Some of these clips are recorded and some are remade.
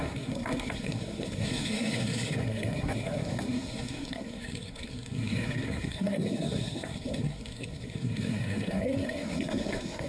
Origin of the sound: remade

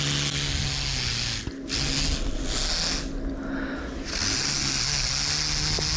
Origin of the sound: recorded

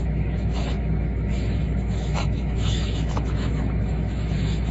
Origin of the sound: remade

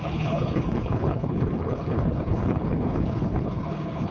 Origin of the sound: remade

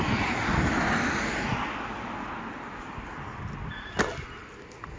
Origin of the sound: recorded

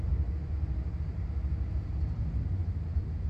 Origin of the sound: recorded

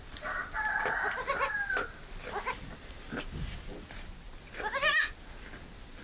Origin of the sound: recorded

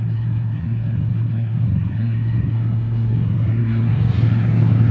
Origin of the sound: remade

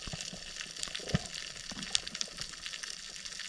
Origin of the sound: recorded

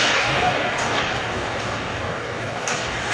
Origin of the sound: remade